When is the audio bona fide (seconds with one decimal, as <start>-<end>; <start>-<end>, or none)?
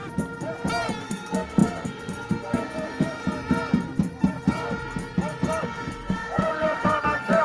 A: 0.0-1.0; 3.2-5.6